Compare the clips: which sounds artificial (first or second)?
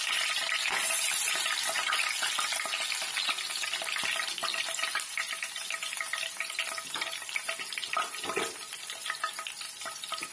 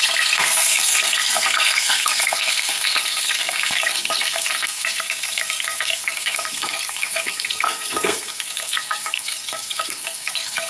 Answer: second